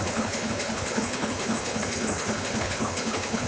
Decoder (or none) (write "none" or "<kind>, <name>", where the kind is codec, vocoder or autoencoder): codec, HILCodec